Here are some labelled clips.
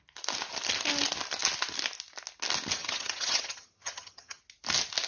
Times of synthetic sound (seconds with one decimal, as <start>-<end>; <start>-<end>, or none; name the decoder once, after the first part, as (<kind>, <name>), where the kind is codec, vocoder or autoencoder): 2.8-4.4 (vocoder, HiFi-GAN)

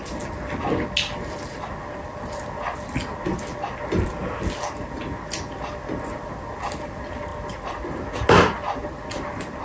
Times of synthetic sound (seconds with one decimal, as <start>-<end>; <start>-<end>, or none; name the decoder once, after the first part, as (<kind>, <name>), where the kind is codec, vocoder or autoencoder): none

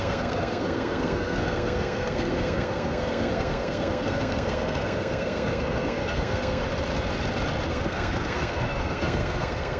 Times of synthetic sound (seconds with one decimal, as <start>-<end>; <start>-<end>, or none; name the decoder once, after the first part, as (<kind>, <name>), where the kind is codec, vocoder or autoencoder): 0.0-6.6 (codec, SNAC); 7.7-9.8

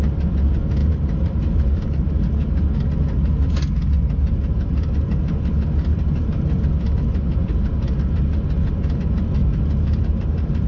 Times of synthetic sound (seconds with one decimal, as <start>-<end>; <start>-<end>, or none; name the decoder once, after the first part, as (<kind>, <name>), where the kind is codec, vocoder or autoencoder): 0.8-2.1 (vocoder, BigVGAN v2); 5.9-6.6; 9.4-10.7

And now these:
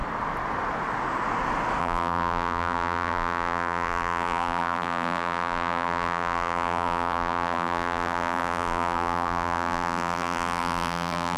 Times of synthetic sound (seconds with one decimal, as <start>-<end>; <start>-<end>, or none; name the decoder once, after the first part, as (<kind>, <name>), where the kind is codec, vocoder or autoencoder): 1.8-11.4 (vocoder, BigVGAN v2)